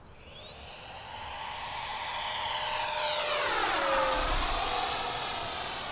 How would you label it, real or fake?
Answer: real